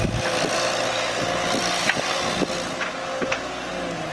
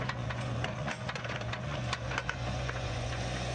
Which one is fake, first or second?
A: second